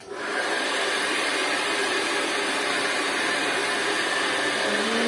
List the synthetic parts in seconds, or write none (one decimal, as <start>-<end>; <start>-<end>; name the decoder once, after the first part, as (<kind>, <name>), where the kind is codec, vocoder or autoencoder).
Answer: 0.0-3.6 (vocoder, BigVGAN v2)